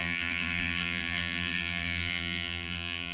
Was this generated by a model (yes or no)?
yes